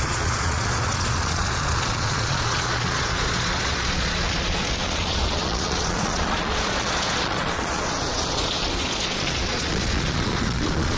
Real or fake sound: fake